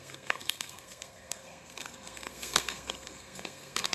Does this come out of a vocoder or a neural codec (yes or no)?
yes